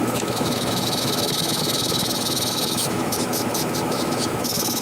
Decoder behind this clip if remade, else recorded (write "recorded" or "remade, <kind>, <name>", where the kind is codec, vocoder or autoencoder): remade, autoencoder, DAC-VAE